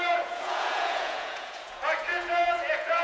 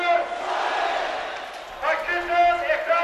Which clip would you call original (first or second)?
second